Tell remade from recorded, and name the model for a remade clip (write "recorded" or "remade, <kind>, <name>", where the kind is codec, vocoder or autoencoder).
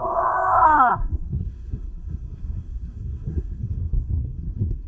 remade, codec, SNAC